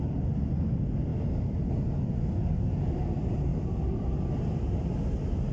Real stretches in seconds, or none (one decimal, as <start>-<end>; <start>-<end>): 0.0-5.5